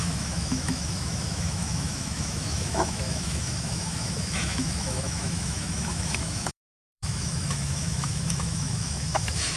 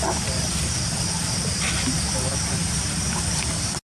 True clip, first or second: second